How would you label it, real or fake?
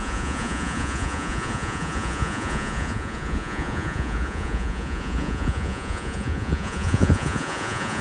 fake